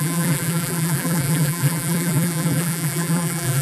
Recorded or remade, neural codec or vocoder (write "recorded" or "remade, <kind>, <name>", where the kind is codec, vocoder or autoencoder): remade, vocoder, BigVGAN v2